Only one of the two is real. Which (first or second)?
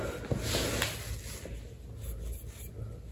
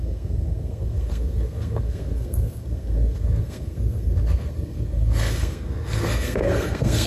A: first